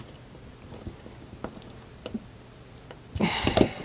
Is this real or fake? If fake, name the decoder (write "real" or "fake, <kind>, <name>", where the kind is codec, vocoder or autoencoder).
real